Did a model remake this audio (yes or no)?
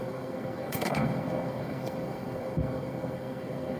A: yes